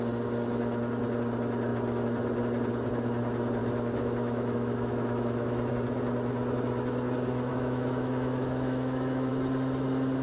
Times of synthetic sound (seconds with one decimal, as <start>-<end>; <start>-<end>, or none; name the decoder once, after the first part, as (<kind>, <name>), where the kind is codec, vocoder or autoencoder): 3.6-5.7 (autoencoder, DAC-VAE); 7.5-9.3